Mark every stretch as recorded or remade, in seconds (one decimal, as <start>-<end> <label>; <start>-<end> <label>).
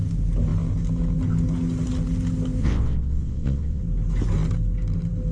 0.0-2.6 recorded; 2.6-3.8 remade; 3.8-5.3 recorded